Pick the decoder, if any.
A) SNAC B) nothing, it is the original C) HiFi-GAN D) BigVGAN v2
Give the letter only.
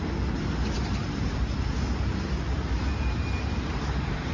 B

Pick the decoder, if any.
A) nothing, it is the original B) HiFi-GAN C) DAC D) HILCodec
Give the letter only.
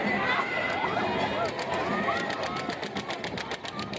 A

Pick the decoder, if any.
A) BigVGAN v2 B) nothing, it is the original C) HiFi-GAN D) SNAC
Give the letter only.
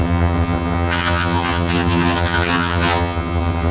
C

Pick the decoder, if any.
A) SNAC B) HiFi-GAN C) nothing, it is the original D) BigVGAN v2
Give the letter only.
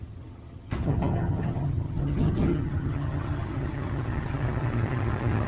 B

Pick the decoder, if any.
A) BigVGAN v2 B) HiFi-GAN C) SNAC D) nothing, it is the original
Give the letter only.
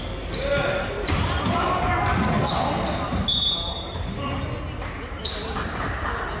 D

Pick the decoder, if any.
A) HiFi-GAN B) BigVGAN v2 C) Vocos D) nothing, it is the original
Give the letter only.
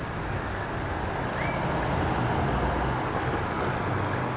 D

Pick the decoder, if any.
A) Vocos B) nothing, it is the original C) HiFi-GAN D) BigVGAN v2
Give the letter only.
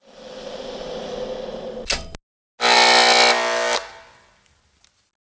B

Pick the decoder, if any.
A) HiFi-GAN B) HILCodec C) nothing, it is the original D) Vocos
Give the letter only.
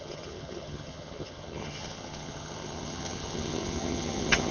A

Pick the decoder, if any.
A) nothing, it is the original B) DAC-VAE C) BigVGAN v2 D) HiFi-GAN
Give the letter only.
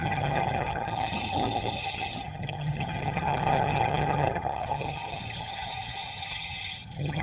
D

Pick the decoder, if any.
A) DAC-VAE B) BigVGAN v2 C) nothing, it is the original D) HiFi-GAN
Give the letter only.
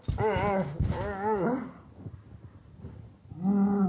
C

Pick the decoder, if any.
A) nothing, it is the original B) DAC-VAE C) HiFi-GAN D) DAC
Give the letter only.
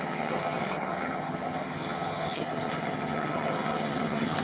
C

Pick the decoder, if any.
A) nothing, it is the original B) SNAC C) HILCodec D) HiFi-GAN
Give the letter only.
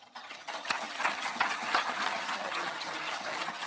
D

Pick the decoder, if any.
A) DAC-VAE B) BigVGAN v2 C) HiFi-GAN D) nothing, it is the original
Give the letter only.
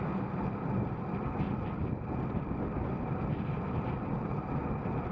D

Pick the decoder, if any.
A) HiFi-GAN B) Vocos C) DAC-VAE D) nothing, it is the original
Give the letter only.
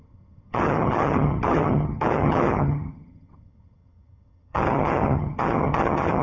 A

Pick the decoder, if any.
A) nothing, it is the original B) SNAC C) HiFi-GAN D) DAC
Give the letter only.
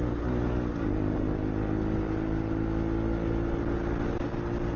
A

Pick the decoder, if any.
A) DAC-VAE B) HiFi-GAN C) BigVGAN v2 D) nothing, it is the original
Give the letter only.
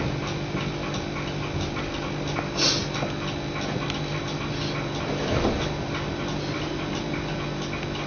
D